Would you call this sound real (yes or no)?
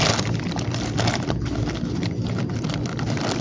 yes